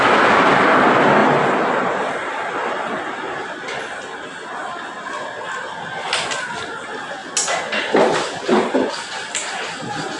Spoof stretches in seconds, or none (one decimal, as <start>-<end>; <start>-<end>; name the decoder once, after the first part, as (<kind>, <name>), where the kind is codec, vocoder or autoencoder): 1.2-2.7 (vocoder, BigVGAN v2)